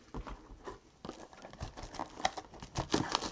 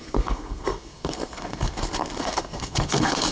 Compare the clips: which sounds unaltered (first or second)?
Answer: first